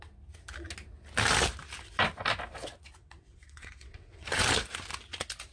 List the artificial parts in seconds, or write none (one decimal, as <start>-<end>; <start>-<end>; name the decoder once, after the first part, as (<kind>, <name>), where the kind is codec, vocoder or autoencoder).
3.0-4.4 (vocoder, WaveNeXt)